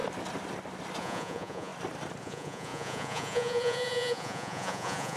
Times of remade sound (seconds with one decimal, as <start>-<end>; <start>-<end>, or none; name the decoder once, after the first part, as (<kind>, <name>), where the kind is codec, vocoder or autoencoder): 1.0-1.7 (vocoder, Vocos); 2.2-5.2

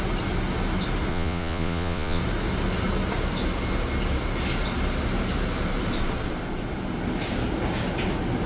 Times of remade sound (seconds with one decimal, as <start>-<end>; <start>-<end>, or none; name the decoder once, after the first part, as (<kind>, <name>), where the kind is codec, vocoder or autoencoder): 1.1-2.2 (vocoder, Vocos)